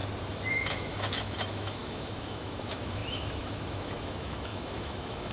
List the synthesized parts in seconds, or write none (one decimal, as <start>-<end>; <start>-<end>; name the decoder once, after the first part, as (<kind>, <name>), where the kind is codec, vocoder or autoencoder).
0.5-5.3 (autoencoder, DAC-VAE)